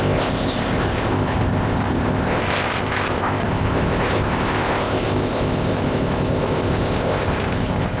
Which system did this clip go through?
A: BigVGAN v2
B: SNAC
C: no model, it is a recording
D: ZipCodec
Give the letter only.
D